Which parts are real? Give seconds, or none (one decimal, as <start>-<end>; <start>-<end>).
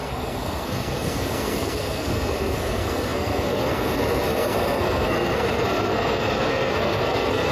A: none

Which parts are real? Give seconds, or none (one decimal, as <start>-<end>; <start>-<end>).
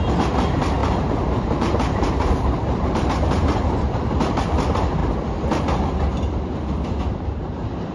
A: 0.0-0.8; 3.1-7.9